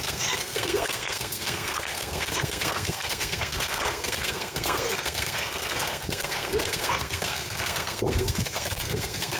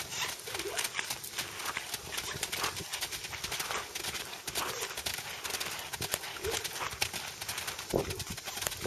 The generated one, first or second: first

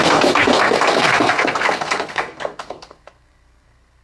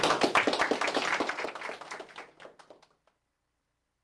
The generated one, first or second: first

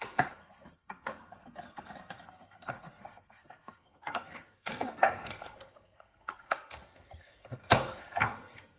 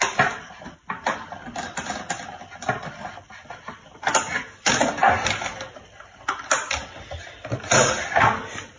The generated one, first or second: first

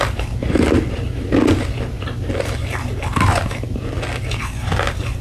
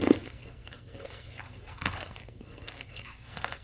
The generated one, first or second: second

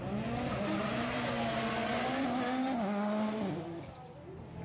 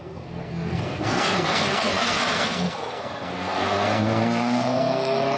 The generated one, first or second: second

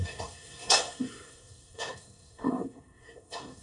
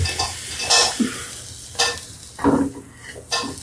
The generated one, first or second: first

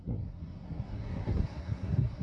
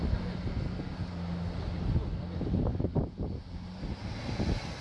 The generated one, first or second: first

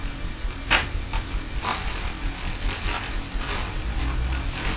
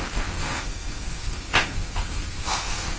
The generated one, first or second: second